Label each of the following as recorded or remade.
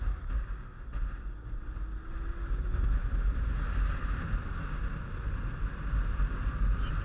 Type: recorded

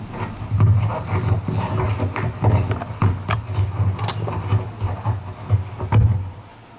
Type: recorded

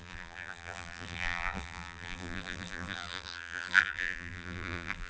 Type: remade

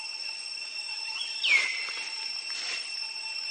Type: recorded